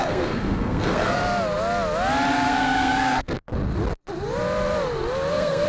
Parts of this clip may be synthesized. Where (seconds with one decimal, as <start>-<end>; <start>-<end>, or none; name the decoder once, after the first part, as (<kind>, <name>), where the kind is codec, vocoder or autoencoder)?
0.0-1.2 (codec, SNAC); 2.3-3.5; 5.3-5.7